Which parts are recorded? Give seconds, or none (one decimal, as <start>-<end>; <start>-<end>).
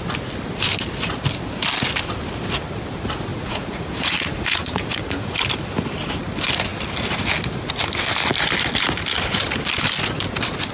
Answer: 0.0-3.3; 5.4-10.7